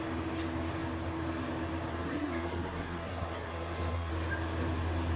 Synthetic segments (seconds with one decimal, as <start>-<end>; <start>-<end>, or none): 1.9-4.1